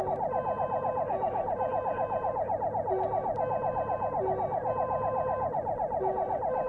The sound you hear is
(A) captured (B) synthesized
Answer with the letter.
B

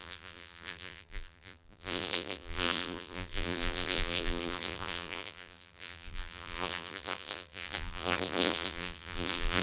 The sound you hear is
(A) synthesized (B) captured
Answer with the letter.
A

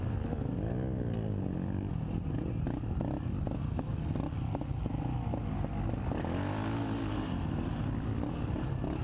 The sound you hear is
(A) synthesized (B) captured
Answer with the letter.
B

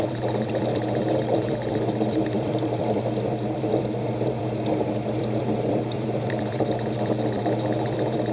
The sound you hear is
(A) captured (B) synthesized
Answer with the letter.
B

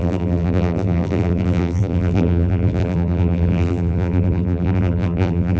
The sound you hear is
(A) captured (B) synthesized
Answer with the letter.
B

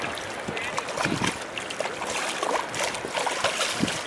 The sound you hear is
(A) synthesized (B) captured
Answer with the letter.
B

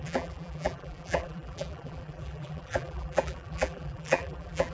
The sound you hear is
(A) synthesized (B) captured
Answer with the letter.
A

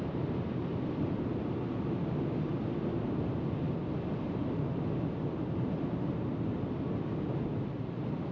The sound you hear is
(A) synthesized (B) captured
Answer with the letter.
B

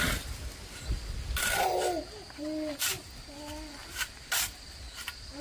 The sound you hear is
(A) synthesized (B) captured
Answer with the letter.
B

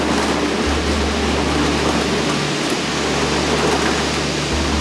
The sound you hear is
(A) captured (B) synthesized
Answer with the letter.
A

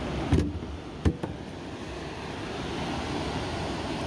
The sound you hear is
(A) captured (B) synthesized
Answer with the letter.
A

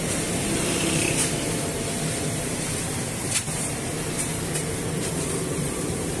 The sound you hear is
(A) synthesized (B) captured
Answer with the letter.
A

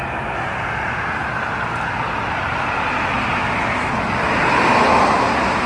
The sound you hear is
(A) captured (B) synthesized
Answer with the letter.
A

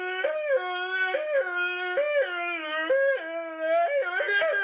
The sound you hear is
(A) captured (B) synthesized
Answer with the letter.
A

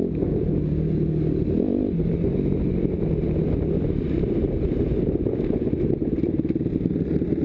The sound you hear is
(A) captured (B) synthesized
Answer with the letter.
A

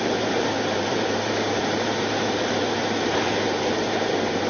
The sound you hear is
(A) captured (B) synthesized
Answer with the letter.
B